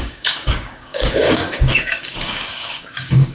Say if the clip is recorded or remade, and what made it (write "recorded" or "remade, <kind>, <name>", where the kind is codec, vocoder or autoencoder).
remade, codec, DAC